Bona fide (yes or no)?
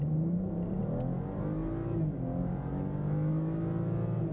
yes